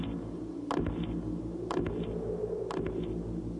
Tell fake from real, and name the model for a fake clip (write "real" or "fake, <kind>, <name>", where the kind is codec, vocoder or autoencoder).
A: real